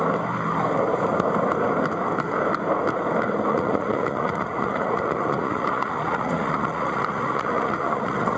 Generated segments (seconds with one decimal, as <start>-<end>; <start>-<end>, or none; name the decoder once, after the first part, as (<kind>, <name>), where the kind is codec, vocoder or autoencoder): 3.5-8.4 (vocoder, Vocos)